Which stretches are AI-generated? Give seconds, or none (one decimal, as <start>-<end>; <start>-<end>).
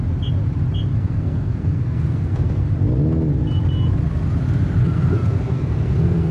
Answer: 0.9-2.7; 4.8-6.3